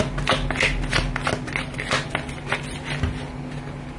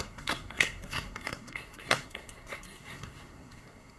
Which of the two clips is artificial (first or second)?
second